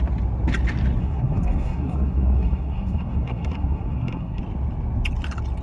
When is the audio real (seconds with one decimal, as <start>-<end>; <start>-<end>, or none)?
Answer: 0.0-1.0; 4.4-5.6